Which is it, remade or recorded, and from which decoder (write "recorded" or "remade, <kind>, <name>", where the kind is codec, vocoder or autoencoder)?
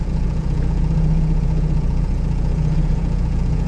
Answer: remade, vocoder, Vocos